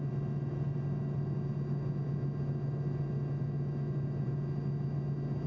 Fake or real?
real